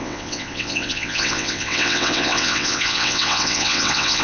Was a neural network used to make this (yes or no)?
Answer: yes